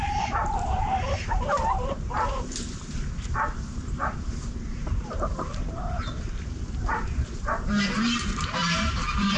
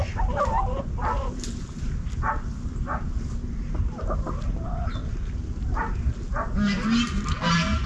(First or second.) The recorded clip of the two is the second